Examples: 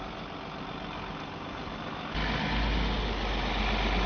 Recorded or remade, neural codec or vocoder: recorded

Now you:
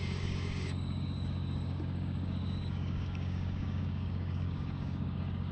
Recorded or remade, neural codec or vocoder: remade, codec, DAC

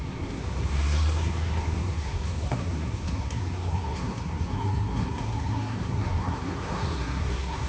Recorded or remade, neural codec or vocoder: remade, codec, SNAC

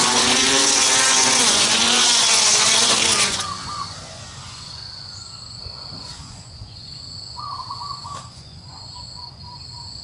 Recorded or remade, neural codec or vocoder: remade, vocoder, Vocos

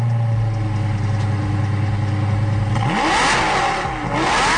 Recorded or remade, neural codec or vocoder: recorded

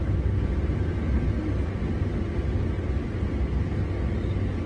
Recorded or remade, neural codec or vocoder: recorded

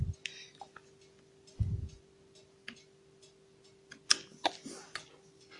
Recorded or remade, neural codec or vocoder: recorded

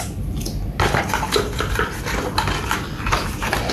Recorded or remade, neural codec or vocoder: recorded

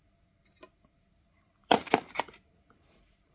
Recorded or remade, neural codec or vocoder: remade, vocoder, BigVGAN v2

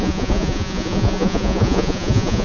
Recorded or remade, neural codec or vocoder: remade, vocoder, Vocos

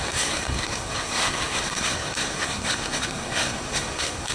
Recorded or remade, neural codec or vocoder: remade, codec, SNAC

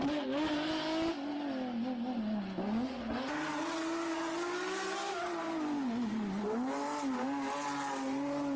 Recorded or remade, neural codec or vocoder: recorded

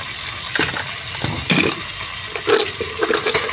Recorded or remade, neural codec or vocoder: recorded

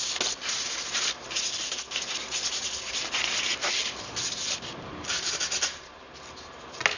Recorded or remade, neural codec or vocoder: recorded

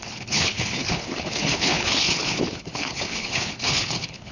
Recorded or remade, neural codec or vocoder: remade, codec, HILCodec